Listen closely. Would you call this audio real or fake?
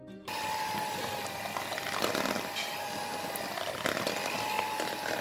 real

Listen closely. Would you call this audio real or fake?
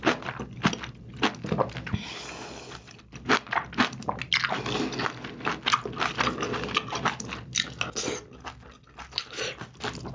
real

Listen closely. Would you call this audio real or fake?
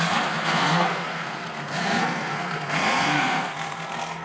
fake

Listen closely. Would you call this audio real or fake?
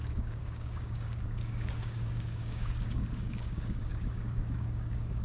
fake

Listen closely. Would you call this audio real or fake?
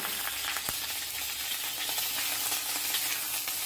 real